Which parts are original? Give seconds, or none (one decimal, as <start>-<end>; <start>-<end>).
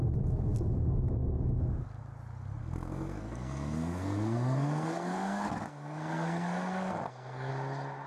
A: 0.0-2.6; 7.5-8.1